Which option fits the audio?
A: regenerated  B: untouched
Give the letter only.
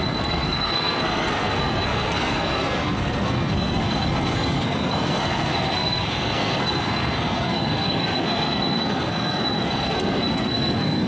A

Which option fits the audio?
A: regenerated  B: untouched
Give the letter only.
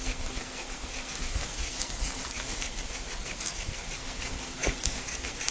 A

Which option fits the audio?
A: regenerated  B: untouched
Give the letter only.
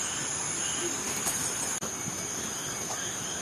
B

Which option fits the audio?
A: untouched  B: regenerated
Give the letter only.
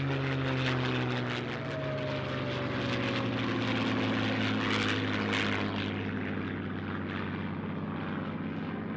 A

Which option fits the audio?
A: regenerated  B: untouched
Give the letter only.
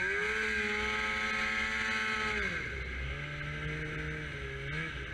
B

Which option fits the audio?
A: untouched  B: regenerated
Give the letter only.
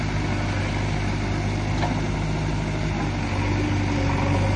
A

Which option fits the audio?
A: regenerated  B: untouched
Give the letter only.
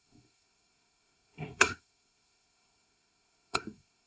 A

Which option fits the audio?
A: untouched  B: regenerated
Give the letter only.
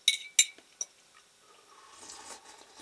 A